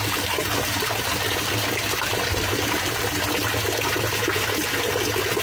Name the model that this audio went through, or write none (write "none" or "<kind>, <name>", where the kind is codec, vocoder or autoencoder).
none